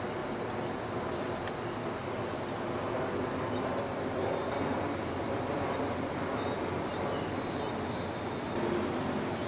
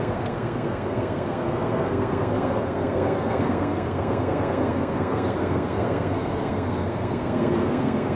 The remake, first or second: second